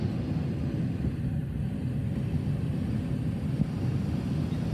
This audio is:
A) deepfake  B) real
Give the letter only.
B